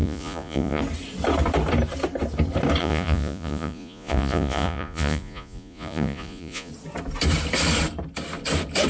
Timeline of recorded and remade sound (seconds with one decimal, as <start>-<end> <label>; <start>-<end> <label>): 0.0-0.8 remade; 0.8-2.8 recorded; 2.8-6.7 remade; 6.7-8.9 recorded